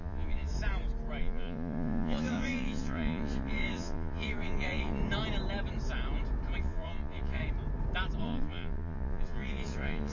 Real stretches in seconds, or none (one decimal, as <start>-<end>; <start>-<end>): 0.5-1.2; 5.0-6.6; 7.4-8.2